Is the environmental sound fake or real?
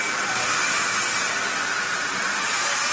real